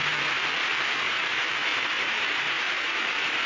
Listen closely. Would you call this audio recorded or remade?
remade